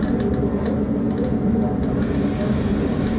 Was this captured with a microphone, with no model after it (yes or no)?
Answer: yes